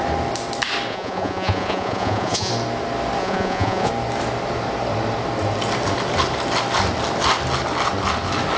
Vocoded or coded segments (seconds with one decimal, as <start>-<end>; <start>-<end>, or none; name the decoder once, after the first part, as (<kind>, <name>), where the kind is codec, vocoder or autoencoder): 0.9-2.5 (vocoder, Vocos); 3.2-3.9